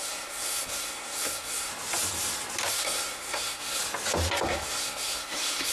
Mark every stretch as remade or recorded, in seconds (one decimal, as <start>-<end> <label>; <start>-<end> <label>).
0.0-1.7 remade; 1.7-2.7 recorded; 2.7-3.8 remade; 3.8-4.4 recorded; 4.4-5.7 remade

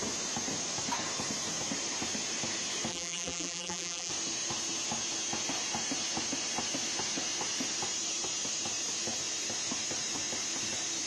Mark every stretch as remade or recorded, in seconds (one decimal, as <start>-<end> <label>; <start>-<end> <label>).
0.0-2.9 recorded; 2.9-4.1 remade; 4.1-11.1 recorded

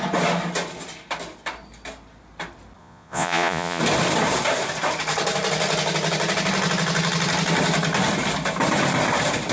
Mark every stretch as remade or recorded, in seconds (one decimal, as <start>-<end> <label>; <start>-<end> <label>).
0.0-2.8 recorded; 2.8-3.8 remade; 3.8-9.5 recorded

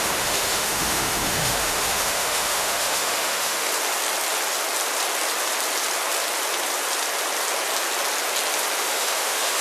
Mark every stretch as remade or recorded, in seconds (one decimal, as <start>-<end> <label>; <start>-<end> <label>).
0.0-3.7 remade; 3.7-8.8 recorded; 8.8-9.6 remade

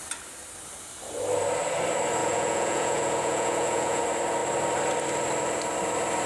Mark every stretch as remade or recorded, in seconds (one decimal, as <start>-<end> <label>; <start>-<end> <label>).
0.0-2.2 recorded; 2.2-4.0 remade; 4.0-6.3 recorded

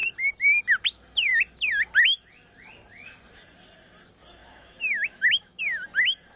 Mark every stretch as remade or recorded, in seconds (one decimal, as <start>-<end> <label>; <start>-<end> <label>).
0.0-4.4 recorded; 4.4-5.6 remade; 5.6-6.4 recorded

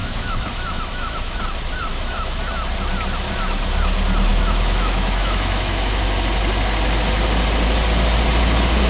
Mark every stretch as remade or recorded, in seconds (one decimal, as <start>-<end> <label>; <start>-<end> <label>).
0.0-1.4 remade; 1.4-1.9 recorded; 1.9-2.4 remade; 2.4-4.3 recorded; 4.3-6.0 remade; 6.0-8.9 recorded